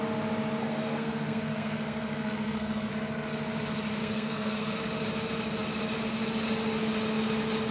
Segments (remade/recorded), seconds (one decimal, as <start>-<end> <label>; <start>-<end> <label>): 0.0-0.6 recorded; 0.6-2.9 remade; 2.9-4.0 recorded; 4.0-4.8 remade; 4.8-7.7 recorded